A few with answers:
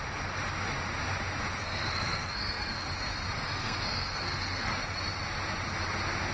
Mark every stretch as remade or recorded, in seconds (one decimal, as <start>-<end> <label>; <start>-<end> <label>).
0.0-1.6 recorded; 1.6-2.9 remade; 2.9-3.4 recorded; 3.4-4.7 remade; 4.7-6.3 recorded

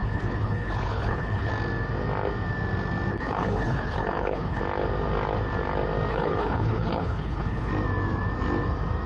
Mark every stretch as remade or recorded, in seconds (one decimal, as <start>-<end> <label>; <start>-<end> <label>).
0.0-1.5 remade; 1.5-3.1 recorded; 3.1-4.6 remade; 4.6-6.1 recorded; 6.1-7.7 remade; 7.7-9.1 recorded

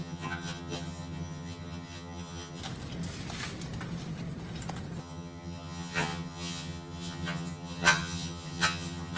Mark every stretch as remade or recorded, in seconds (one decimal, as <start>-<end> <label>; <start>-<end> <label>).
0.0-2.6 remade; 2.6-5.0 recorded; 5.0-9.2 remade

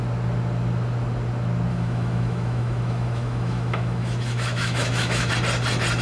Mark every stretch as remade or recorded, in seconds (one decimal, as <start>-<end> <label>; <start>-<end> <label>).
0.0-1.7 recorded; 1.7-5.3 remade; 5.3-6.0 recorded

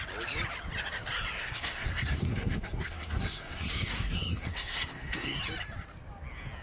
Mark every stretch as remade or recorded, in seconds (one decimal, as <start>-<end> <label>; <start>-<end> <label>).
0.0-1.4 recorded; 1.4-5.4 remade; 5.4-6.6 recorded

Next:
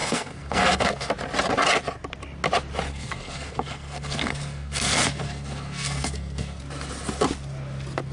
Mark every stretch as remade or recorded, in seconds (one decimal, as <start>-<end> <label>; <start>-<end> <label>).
0.0-1.1 remade; 1.1-2.9 recorded; 2.9-6.6 remade; 6.6-8.1 recorded